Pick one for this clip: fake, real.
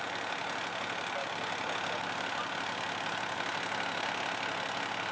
real